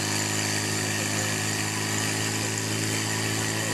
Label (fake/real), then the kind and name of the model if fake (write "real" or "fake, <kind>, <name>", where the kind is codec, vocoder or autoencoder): real